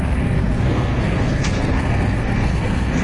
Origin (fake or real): fake